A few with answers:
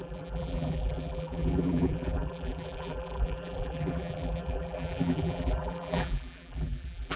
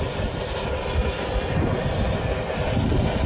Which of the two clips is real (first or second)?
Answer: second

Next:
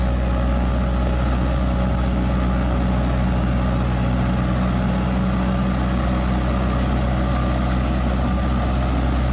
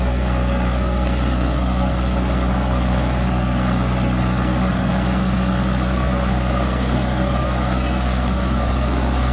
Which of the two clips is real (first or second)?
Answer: first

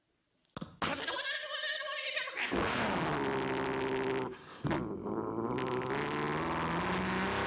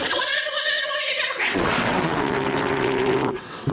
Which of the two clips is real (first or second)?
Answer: first